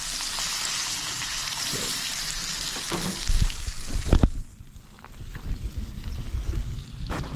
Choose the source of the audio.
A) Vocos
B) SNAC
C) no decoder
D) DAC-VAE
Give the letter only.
C